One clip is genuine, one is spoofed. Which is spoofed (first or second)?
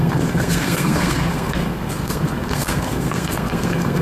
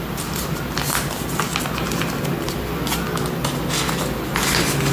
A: first